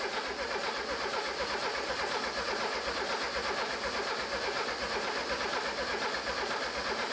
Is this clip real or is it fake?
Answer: real